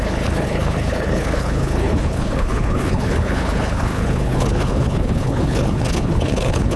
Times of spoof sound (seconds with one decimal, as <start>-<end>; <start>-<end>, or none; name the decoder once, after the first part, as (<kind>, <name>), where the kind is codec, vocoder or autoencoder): 0.0-6.8 (codec, HILCodec)